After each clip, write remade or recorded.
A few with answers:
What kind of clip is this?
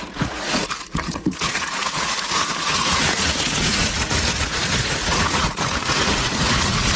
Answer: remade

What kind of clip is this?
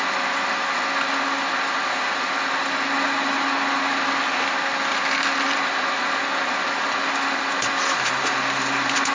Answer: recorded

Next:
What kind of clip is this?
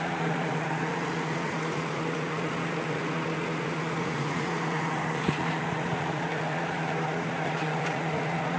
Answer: remade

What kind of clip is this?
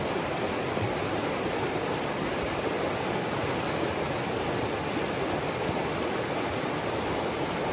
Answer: recorded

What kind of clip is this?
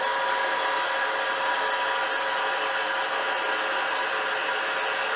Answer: recorded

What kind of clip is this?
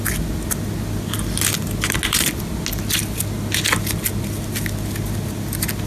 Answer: recorded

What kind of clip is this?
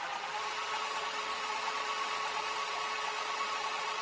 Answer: remade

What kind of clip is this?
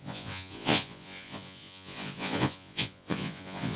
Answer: remade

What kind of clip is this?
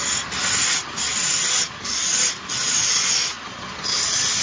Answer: recorded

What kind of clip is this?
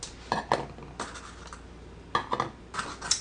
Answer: recorded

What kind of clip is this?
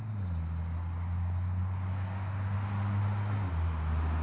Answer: recorded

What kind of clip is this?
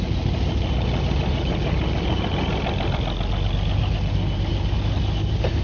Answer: recorded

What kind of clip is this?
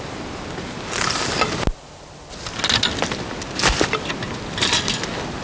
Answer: recorded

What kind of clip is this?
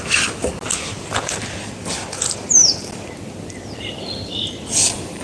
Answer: recorded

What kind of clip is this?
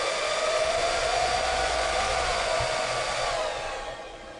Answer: remade